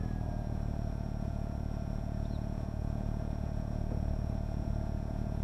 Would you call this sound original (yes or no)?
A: no